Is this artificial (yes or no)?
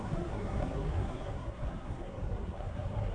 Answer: yes